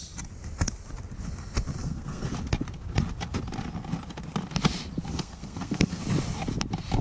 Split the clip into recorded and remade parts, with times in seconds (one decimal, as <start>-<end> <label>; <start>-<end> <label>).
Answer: 0.0-1.8 recorded; 1.8-2.3 remade; 2.3-5.1 recorded; 5.1-6.0 remade; 6.0-7.0 recorded